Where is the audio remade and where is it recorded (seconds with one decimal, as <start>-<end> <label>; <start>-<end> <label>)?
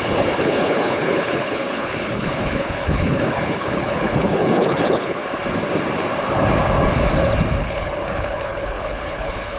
0.0-5.2 remade; 5.2-7.6 recorded; 7.6-9.6 remade